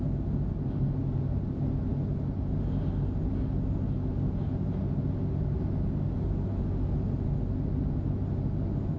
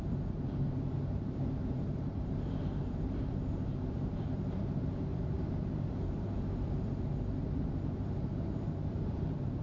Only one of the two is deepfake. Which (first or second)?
second